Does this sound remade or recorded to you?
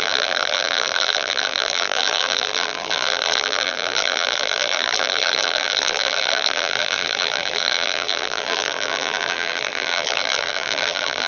remade